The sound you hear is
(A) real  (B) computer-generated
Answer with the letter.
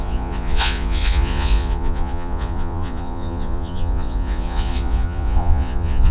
B